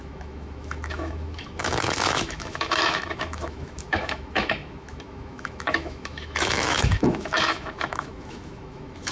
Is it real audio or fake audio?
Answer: fake